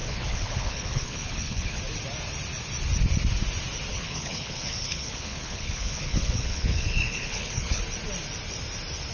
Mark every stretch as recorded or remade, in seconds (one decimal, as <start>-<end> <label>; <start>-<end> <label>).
0.0-1.8 remade; 1.8-3.9 recorded; 3.9-7.8 remade; 7.8-9.1 recorded